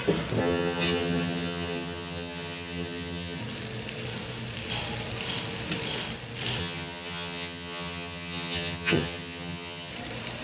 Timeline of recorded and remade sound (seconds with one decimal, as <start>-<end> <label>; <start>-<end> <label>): 0.0-0.4 recorded; 0.4-3.4 remade; 3.4-6.6 recorded; 6.6-9.9 remade; 9.9-10.4 recorded